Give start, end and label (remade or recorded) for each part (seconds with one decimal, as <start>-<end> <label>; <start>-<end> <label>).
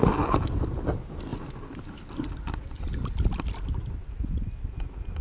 0.0-5.2 recorded